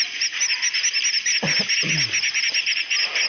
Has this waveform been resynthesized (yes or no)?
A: no